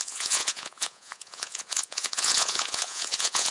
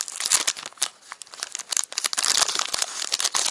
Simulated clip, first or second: first